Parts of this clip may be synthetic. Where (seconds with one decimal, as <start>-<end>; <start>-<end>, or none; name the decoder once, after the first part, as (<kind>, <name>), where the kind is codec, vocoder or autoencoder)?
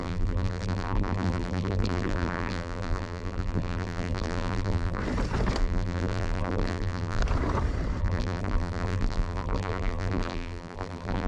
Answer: 0.0-5.0 (vocoder, BigVGAN v2); 5.6-7.2; 8.0-11.3